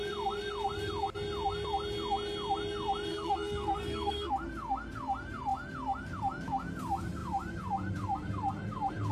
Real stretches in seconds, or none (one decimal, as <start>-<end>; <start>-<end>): 0.0-3.1; 4.3-9.1